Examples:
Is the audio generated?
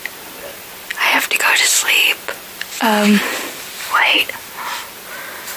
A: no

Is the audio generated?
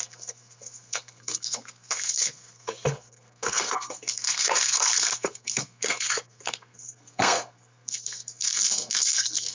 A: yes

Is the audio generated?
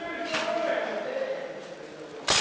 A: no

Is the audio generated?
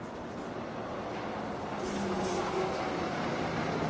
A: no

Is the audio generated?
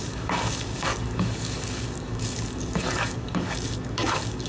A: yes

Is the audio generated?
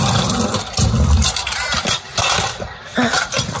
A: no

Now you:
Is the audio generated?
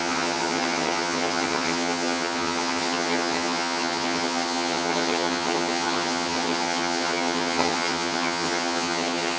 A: yes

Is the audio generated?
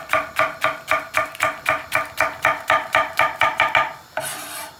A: no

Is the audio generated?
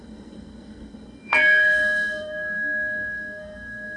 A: yes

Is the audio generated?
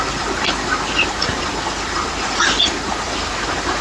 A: no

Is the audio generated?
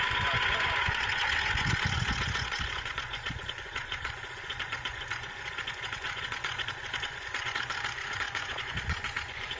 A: yes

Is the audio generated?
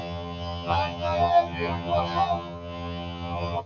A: yes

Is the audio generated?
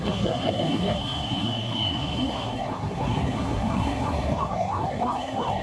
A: yes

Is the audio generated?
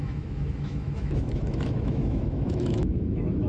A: yes